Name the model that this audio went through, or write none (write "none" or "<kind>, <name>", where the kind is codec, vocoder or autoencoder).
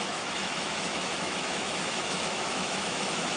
autoencoder, DAC-VAE